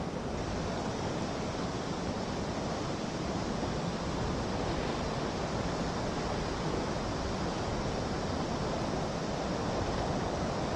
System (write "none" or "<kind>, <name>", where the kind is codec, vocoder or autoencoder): none